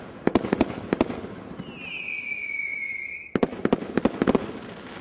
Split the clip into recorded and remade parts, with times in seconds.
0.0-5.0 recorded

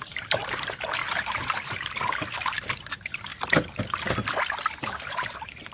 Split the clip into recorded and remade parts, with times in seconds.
0.0-3.3 remade; 3.3-5.1 recorded; 5.1-5.7 remade

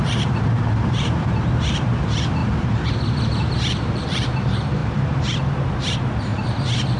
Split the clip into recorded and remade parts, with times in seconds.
0.0-7.0 remade